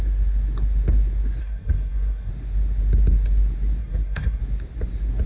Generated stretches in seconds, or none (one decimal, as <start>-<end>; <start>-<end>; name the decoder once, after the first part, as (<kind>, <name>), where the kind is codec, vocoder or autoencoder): 1.4-2.3 (codec, SNAC); 3.8-4.4